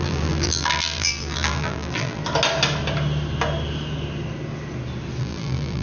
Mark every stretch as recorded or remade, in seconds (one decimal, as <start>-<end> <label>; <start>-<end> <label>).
0.0-2.2 remade; 2.2-5.2 recorded; 5.2-5.8 remade